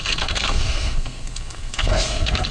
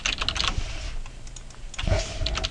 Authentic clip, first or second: second